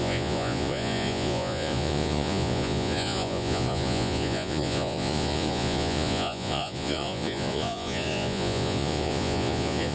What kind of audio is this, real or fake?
fake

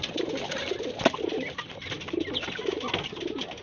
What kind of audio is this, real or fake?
real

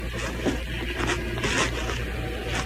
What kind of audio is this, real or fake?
real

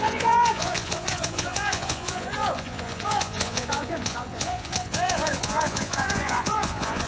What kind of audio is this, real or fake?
fake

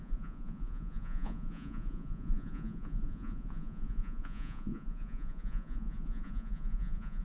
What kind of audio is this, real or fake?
fake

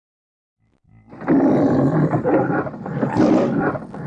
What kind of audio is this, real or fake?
fake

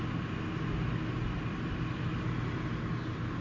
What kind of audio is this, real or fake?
real